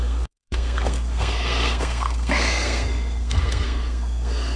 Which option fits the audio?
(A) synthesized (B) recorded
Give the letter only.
A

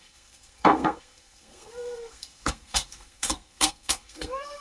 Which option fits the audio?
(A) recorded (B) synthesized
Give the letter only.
B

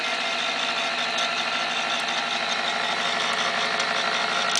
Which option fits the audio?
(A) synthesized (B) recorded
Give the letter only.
B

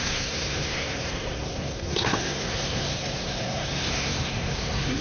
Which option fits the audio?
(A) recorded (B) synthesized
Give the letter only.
B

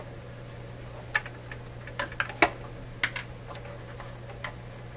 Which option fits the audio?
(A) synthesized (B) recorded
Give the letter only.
B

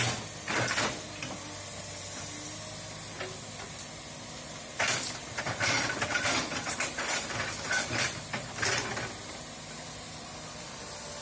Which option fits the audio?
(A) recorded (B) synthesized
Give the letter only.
A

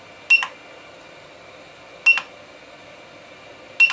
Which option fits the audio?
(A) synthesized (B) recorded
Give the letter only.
B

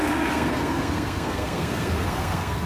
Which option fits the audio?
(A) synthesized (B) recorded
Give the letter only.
A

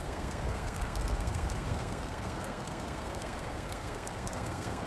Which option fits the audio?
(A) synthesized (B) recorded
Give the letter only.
A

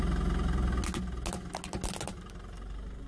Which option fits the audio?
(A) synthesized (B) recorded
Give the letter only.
B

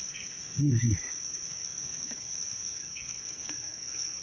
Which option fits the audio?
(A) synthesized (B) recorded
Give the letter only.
A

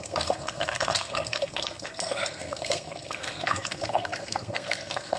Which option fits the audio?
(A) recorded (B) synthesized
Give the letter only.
B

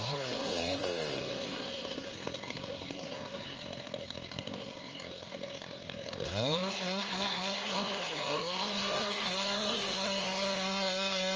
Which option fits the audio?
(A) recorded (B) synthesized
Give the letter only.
B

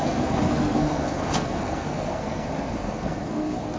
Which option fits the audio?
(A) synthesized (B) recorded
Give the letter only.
A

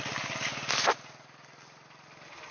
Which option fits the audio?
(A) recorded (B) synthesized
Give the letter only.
A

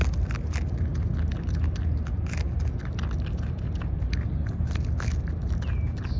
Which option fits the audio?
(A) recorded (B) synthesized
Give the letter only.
A